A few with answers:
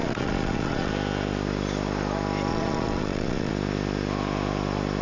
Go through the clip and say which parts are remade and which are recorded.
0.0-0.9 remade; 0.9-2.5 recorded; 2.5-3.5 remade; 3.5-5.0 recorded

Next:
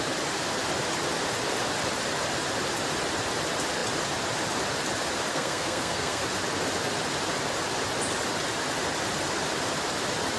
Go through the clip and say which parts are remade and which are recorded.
0.0-5.3 recorded; 5.3-6.2 remade; 6.2-10.4 recorded

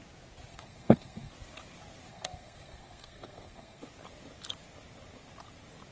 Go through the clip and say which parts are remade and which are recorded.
0.0-0.5 recorded; 0.5-1.3 remade; 1.3-2.1 recorded; 2.1-3.8 remade; 3.8-5.9 recorded

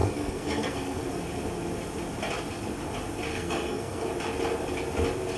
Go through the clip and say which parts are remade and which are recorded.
0.0-1.0 remade; 1.0-3.3 recorded; 3.3-4.1 remade; 4.1-5.4 recorded

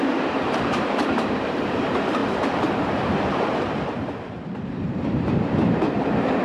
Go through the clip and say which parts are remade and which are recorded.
0.0-6.4 remade

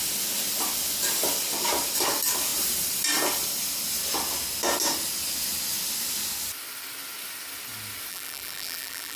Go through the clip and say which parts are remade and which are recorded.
0.0-8.1 recorded; 8.1-9.2 remade

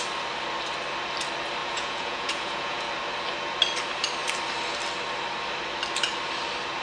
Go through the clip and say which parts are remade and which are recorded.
0.0-1.6 recorded; 1.6-2.9 remade; 2.9-6.8 recorded

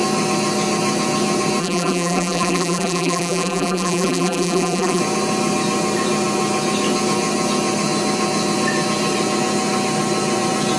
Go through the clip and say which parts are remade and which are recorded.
0.0-1.6 recorded; 1.6-5.0 remade; 5.0-10.8 recorded